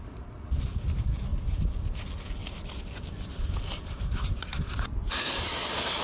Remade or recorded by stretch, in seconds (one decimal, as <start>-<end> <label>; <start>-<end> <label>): 0.0-1.3 recorded; 1.3-2.0 remade; 2.0-2.4 recorded; 2.4-3.6 remade; 3.6-4.5 recorded; 4.5-5.5 remade; 5.5-6.0 recorded